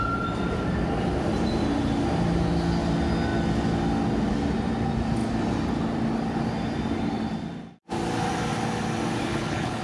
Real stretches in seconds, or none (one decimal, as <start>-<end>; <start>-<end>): 0.0-9.2